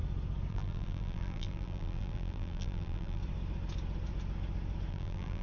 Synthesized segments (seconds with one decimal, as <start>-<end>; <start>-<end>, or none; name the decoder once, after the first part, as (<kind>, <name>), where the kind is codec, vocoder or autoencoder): 0.5-3.2 (vocoder, BigVGAN v2); 4.9-5.4